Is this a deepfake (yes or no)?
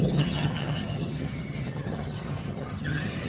yes